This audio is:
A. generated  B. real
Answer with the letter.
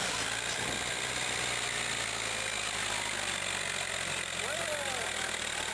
B